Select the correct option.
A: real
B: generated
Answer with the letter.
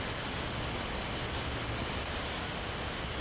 A